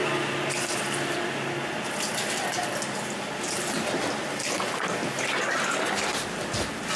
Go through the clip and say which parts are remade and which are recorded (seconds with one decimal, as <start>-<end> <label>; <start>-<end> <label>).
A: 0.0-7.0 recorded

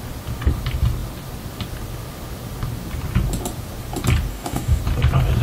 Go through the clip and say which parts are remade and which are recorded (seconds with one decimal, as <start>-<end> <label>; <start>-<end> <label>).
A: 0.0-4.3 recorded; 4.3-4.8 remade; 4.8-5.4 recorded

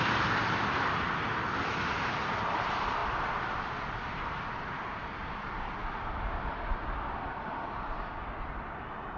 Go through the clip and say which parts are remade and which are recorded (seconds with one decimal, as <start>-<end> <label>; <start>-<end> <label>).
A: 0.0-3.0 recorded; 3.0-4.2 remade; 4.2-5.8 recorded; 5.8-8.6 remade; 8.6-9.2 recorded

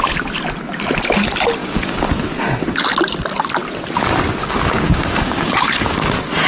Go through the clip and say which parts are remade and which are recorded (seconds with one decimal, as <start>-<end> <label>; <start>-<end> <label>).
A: 0.0-1.6 recorded; 1.6-2.1 remade; 2.1-4.4 recorded; 4.4-6.1 remade; 6.1-6.5 recorded

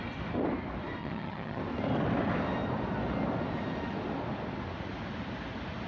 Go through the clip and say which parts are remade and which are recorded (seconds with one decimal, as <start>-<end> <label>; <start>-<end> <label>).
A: 0.0-1.0 recorded; 1.0-1.6 remade; 1.6-5.9 recorded